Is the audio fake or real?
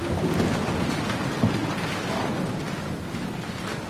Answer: real